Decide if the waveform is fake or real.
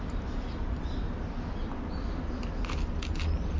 real